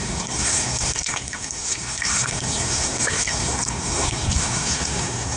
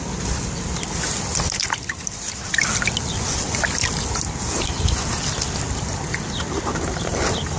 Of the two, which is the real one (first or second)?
second